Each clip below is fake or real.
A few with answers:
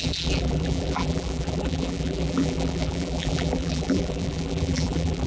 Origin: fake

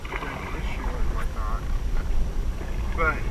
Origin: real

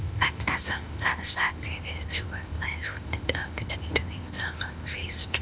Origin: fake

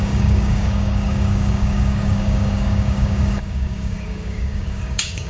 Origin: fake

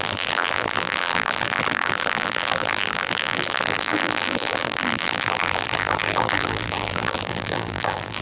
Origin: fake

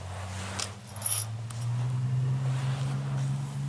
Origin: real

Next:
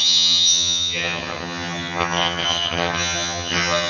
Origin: fake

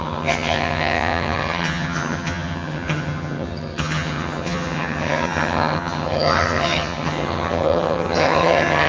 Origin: fake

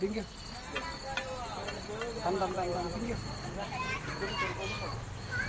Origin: real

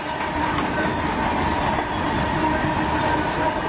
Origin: real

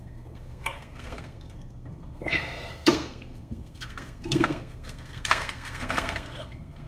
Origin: fake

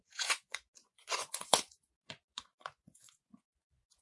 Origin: fake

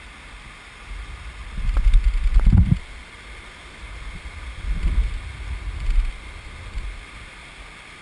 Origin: real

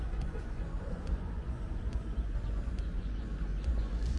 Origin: fake